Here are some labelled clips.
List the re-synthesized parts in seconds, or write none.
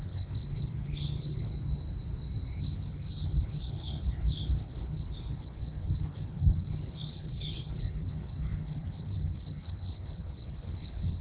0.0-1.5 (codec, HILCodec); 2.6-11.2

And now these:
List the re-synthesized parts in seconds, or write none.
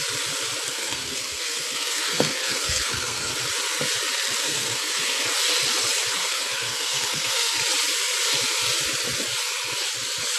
0.7-3.3 (codec, SNAC); 4.4-5.2; 6.2-7.6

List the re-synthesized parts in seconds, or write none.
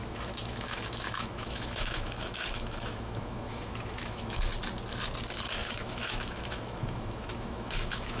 0.0-4.5 (autoencoder, DAC-VAE); 5.6-8.2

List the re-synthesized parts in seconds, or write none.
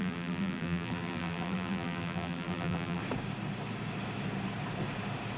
0.0-3.0 (vocoder, BigVGAN v2)